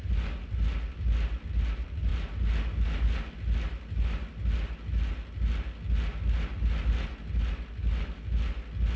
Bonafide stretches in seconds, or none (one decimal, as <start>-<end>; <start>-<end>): 0.0-9.0